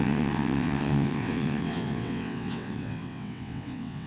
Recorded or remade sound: remade